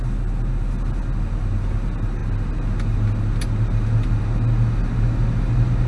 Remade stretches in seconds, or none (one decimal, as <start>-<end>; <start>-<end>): none